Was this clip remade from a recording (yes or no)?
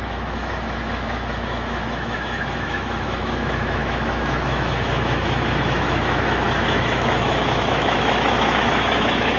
yes